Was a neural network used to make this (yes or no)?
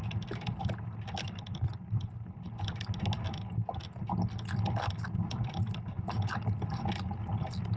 no